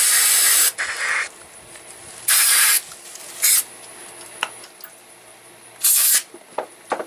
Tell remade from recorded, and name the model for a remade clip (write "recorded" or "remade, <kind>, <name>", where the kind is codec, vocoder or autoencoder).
recorded